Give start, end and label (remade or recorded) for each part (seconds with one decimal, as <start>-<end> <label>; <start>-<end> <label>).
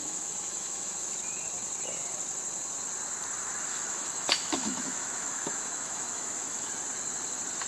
0.0-1.1 remade; 1.1-3.7 recorded; 3.7-6.7 remade; 6.7-7.7 recorded